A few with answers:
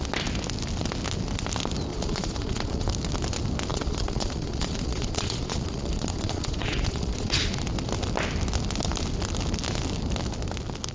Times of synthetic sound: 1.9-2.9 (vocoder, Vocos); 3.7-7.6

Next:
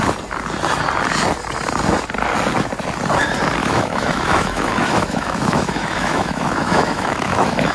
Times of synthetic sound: 3.6-7.7 (autoencoder, DAC-VAE)

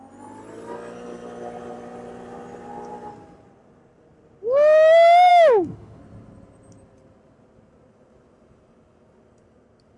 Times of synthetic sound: 5.3-6.0 (autoencoder, DAC-VAE)

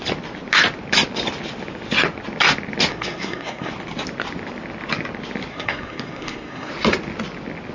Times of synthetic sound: 2.9-3.7 (codec, SNAC); 5.5-6.7

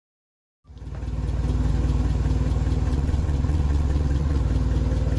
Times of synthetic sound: 2.9-4.4 (vocoder, WaveNeXt)

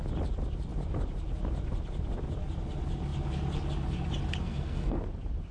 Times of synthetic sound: 4.4-5.0 (codec, SNAC)

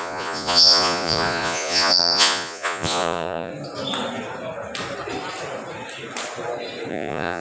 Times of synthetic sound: 0.0-3.5 (vocoder, Vocos); 6.9-7.4

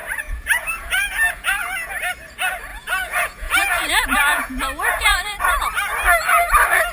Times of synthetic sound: 0.0-1.9 (vocoder, Vocos); 2.7-5.4